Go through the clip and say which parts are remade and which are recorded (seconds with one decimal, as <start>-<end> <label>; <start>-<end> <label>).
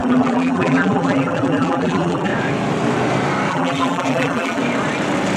0.0-2.3 remade; 2.3-3.5 recorded; 3.5-4.6 remade; 4.6-5.4 recorded